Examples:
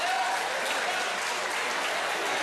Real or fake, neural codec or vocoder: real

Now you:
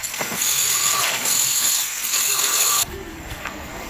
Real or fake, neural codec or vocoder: fake, codec, SNAC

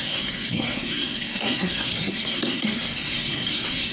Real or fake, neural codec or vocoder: fake, codec, SNAC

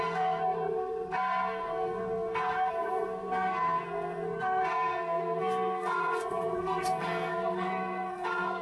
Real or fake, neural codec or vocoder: fake, codec, SNAC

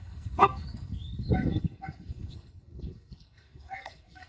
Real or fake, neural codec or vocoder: fake, codec, SNAC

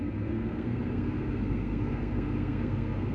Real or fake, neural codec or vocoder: fake, codec, SNAC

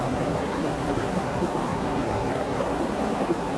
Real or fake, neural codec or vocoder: fake, codec, SNAC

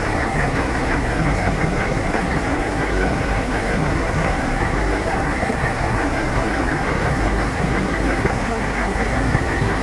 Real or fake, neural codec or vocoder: fake, codec, SNAC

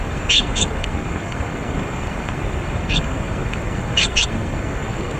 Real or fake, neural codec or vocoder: fake, codec, SNAC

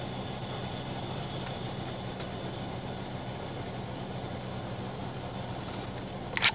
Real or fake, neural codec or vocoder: real